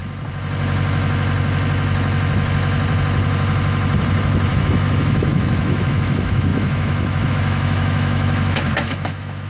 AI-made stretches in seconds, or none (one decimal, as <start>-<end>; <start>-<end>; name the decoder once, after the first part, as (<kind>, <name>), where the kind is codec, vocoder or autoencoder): 4.5-9.5 (autoencoder, DAC-VAE)